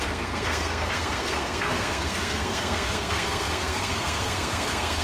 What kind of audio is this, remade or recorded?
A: remade